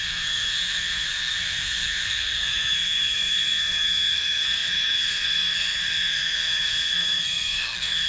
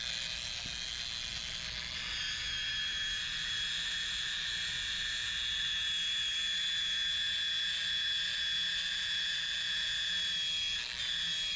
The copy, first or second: first